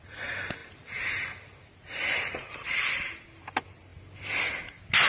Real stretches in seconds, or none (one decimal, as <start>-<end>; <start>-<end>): 0.0-5.1